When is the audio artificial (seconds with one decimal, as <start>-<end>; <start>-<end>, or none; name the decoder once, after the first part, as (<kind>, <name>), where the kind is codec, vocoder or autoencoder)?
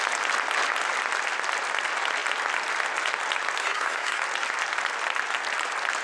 3.6-4.2 (codec, SNAC)